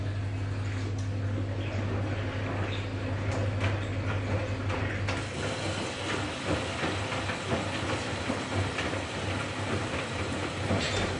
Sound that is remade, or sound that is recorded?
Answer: recorded